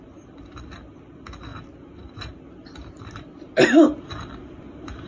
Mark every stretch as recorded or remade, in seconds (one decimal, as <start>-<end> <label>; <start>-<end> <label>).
0.0-5.1 recorded